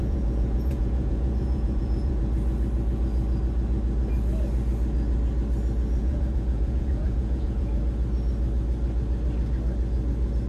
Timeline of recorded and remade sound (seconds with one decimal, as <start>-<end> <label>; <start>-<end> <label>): 0.0-2.2 remade; 2.2-6.0 recorded; 6.0-7.8 remade; 7.8-10.5 recorded